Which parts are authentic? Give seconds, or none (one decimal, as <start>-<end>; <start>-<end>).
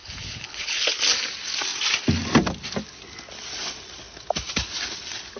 1.0-5.4